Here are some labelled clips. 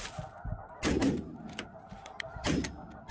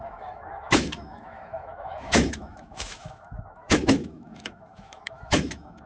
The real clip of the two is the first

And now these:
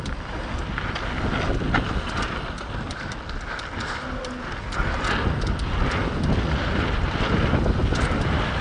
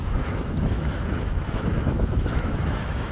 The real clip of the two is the first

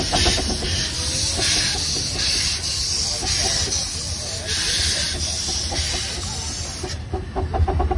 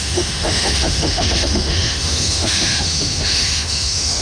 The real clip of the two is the first